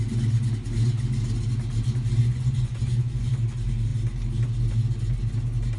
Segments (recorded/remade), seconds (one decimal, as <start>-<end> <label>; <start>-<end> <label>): 0.0-2.2 recorded; 2.2-3.3 remade; 3.3-5.8 recorded